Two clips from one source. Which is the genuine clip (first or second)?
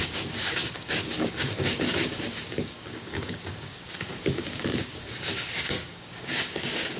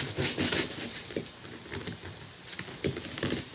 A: second